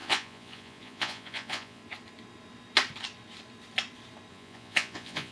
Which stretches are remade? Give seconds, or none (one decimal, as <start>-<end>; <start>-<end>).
0.0-1.8; 4.3-5.3